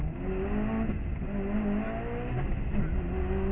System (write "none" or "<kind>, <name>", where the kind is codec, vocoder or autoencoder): none